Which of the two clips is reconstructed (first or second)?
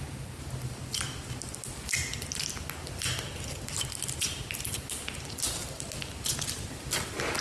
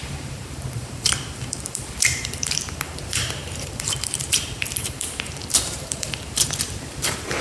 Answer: second